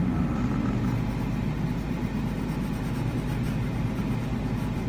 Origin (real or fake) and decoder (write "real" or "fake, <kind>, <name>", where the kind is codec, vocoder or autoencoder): real